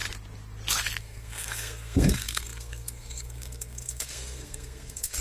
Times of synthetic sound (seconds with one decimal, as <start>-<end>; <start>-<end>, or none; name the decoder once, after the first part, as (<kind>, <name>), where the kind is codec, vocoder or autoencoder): 1.0-5.2 (codec, SNAC)